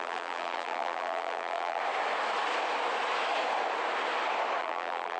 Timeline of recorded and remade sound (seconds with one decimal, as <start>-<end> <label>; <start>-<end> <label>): 0.0-1.8 remade; 1.8-4.6 recorded; 4.6-5.2 remade